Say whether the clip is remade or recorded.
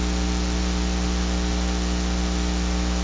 recorded